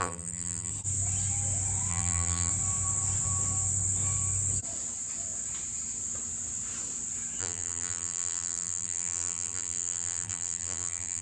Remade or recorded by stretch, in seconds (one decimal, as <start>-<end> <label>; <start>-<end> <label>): 0.0-0.7 remade; 0.7-1.9 recorded; 1.9-2.5 remade; 2.5-7.4 recorded; 7.4-11.2 remade

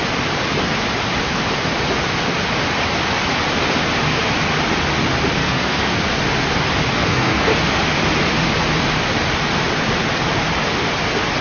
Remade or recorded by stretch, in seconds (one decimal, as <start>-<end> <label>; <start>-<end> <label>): 0.0-5.4 recorded; 5.4-6.0 remade; 6.0-7.0 recorded; 7.0-7.5 remade; 7.5-11.4 recorded

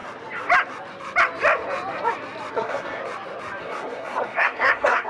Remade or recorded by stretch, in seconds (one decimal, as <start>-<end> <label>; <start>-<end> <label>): 0.0-2.5 recorded; 2.5-3.0 remade; 3.0-3.6 recorded; 3.6-5.1 remade

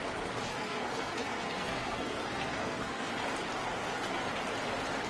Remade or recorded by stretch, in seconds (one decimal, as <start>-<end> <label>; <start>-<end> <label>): 0.0-0.5 recorded; 0.5-3.1 remade; 3.1-3.6 recorded; 3.6-4.3 remade; 4.3-5.1 recorded

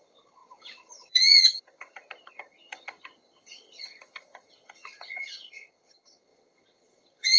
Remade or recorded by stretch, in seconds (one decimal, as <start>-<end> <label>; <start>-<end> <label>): 0.0-7.4 remade

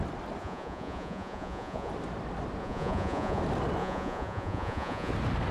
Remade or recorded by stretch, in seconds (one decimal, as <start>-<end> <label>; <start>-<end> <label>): 0.0-0.4 recorded; 0.4-1.9 remade; 1.9-2.6 recorded; 2.6-3.4 remade; 3.4-3.8 recorded; 3.8-5.1 remade; 5.1-5.5 recorded